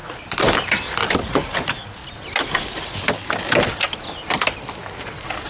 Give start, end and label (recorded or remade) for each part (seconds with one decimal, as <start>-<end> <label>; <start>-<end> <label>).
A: 0.0-1.2 recorded; 1.2-2.0 remade; 2.0-5.5 recorded